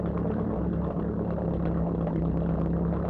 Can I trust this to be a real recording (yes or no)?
yes